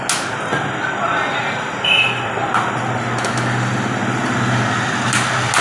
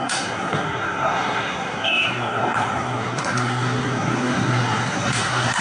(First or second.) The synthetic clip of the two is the second